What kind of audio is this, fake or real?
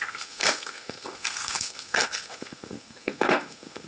fake